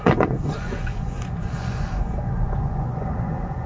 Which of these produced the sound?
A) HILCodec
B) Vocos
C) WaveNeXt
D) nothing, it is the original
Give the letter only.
B